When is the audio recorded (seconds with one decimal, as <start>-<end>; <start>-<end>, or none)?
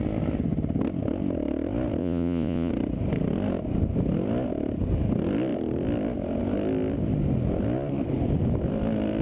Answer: 0.0-2.0; 2.7-9.2